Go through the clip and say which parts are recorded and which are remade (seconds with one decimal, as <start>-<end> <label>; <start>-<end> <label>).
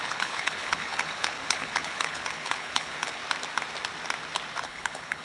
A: 0.0-3.2 remade; 3.2-4.6 recorded; 4.6-5.2 remade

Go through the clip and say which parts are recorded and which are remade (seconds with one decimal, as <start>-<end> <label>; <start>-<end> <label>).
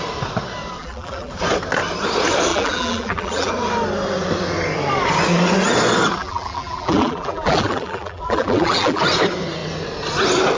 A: 0.0-0.8 recorded; 0.8-1.3 remade; 1.3-2.5 recorded; 2.5-3.5 remade; 3.5-6.2 recorded; 6.2-9.0 remade; 9.0-10.6 recorded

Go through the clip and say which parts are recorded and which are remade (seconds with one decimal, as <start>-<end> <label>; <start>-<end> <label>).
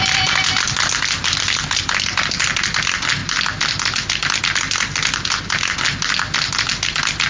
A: 0.0-7.3 recorded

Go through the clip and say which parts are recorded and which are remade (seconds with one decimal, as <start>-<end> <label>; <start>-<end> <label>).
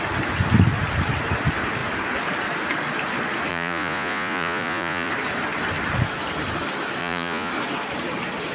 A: 0.0-3.5 recorded; 3.5-5.1 remade; 5.1-7.0 recorded; 7.0-7.5 remade; 7.5-8.5 recorded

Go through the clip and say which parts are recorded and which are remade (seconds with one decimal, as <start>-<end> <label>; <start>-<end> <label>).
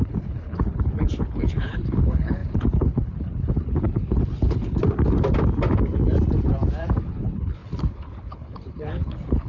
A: 0.0-4.8 remade; 4.8-7.0 recorded; 7.0-9.5 remade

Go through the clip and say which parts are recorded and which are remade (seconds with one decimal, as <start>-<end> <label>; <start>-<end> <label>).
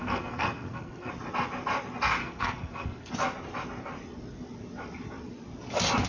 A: 0.0-1.1 remade; 1.1-2.2 recorded; 2.2-3.1 remade; 3.1-6.1 recorded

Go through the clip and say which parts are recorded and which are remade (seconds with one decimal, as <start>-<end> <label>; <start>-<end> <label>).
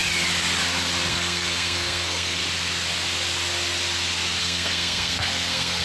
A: 0.0-1.1 recorded; 1.1-2.4 remade; 2.4-4.4 recorded; 4.4-5.8 remade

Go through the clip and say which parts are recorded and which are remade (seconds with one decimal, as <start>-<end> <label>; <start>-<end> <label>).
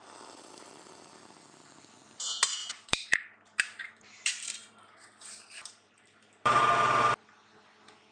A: 0.0-2.6 recorded; 2.6-6.6 remade; 6.6-8.1 recorded